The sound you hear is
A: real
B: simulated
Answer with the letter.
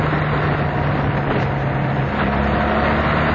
A